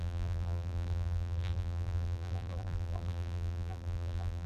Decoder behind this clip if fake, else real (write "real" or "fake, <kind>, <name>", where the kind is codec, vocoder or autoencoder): fake, vocoder, BigVGAN v2